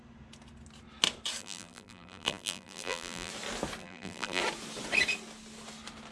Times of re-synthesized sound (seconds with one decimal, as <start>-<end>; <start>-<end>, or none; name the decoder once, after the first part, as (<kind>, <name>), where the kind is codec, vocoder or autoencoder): 1.4-3.3 (vocoder, BigVGAN v2); 3.8-4.4